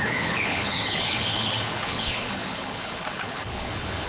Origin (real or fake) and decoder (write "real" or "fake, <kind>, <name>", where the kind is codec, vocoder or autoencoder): fake, codec, HILCodec